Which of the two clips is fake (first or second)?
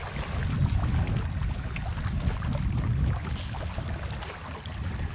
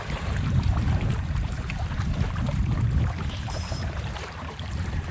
second